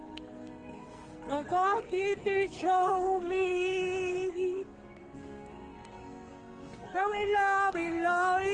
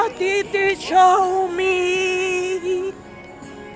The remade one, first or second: first